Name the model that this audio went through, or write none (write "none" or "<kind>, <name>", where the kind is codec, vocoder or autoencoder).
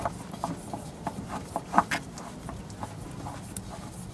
none